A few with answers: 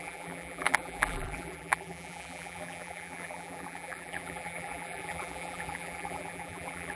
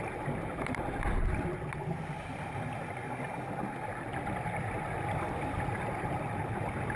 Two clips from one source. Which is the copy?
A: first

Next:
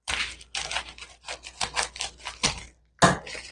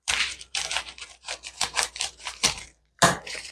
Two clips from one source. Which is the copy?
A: second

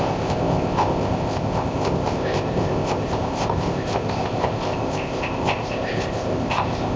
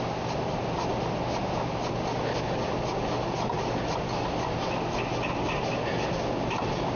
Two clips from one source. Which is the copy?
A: first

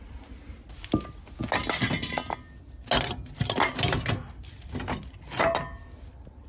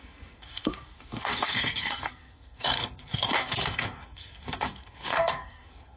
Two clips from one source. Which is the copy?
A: second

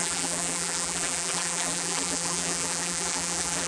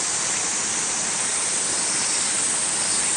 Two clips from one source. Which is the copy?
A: first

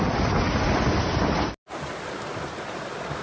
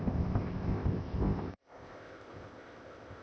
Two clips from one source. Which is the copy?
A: second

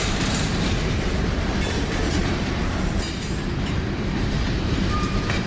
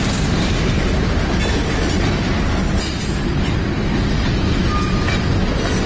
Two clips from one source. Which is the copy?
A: first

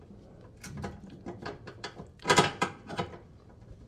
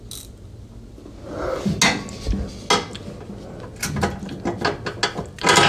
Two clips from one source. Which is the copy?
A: first